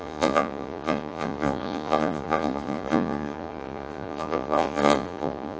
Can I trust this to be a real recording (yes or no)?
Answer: no